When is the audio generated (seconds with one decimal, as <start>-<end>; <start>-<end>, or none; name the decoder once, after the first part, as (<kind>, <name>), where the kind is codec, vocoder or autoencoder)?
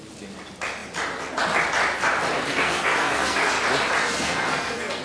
2.5-3.5 (codec, SNAC); 4.0-5.0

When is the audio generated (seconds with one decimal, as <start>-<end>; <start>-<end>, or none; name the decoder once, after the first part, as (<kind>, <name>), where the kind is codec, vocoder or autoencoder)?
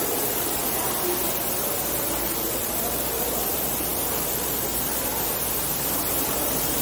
0.0-0.6 (vocoder, BigVGAN v2); 2.6-5.1; 5.9-6.8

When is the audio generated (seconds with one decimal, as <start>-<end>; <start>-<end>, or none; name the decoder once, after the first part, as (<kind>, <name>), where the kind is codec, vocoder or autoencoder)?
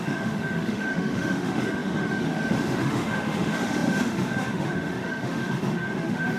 0.0-6.4 (autoencoder, DAC-VAE)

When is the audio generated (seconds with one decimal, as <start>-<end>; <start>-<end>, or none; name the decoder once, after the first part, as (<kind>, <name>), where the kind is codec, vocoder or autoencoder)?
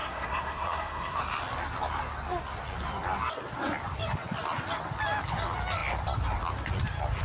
0.0-1.2 (codec, SNAC)